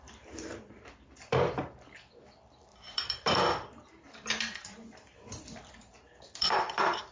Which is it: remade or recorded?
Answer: remade